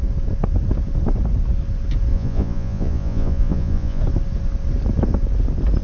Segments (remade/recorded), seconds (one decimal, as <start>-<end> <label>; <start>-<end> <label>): 0.0-2.1 recorded; 2.1-4.0 remade; 4.0-5.8 recorded